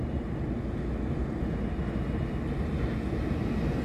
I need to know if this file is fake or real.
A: real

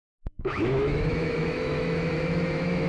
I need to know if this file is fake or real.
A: fake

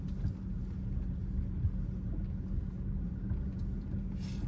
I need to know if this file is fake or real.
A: real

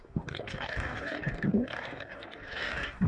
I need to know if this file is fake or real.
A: fake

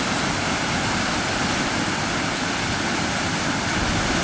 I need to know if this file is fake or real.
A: real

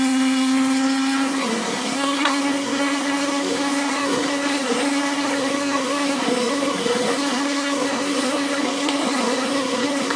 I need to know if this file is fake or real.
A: fake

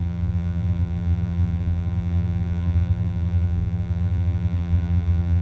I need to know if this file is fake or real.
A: fake